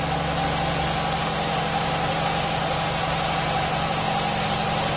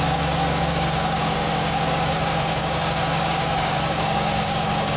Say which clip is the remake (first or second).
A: second